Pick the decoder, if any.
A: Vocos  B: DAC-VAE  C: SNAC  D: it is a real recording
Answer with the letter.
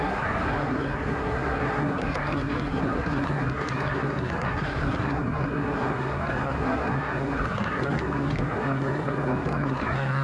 C